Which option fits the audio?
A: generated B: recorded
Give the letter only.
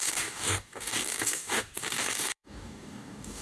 A